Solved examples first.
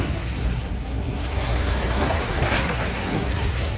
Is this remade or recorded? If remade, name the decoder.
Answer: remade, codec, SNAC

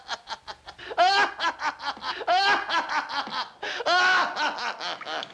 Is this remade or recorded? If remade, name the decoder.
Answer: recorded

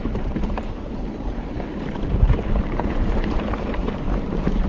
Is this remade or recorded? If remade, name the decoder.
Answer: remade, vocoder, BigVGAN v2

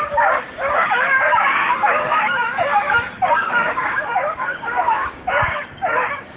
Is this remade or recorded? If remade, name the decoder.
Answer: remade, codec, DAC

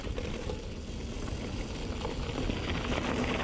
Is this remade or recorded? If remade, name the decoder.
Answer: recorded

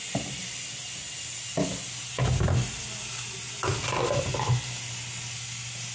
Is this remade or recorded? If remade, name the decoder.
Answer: recorded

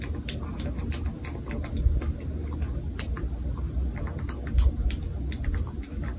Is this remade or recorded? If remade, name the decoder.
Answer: recorded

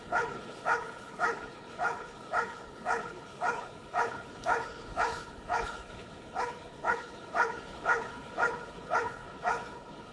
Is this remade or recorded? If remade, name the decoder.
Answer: remade, codec, HILCodec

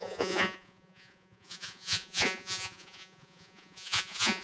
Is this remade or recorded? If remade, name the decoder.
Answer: remade, vocoder, Vocos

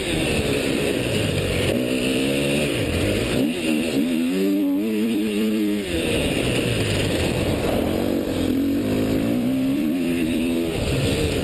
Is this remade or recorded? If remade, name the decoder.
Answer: remade, vocoder, BigVGAN v2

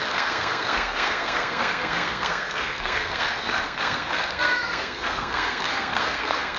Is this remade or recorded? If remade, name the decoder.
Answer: remade, codec, SNAC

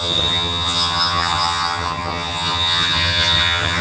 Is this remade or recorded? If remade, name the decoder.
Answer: remade, vocoder, HiFi-GAN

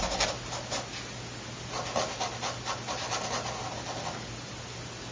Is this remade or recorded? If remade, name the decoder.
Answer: recorded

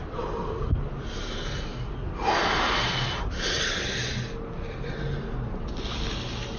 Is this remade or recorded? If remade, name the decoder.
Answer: recorded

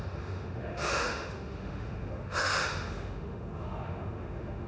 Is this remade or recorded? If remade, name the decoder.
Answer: remade, autoencoder, DAC-VAE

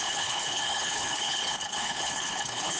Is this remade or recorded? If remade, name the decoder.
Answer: remade, codec, HILCodec